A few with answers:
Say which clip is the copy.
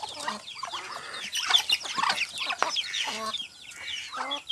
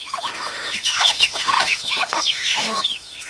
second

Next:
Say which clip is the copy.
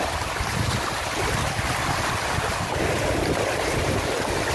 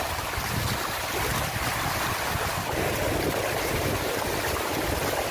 first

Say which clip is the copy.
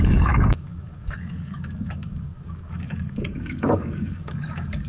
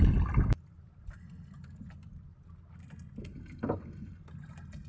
first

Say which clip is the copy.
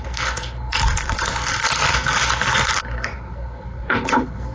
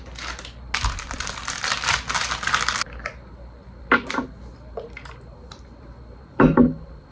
first